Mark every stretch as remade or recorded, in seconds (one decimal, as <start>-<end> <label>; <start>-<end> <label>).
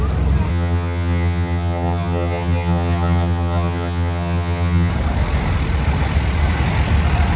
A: 0.0-0.5 recorded; 0.5-4.9 remade; 4.9-7.4 recorded